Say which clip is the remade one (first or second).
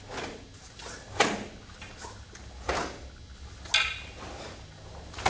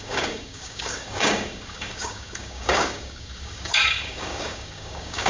second